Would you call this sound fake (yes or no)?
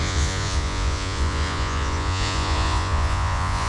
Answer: yes